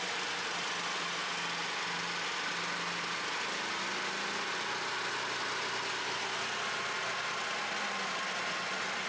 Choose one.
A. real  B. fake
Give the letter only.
A